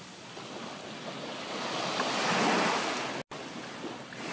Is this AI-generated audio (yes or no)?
no